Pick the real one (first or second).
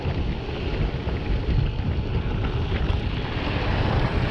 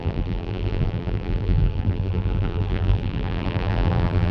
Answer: first